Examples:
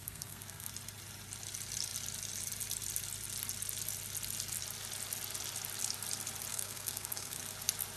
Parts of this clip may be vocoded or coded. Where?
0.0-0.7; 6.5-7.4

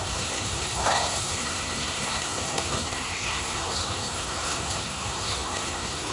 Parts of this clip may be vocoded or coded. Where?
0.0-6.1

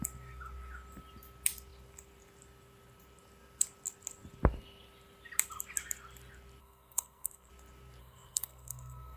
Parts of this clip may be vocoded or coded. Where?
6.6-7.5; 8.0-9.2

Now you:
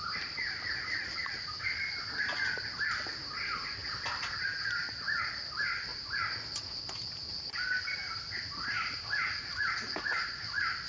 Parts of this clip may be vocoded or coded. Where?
none